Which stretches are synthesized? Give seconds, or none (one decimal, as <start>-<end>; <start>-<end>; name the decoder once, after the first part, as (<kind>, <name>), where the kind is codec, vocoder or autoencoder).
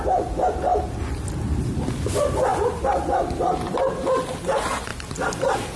0.7-2.0 (vocoder, BigVGAN v2); 2.5-3.9; 4.9-5.8